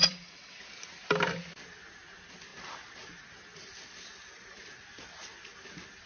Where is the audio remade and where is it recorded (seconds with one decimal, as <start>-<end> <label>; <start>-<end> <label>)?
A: 0.0-0.6 remade; 0.6-6.1 recorded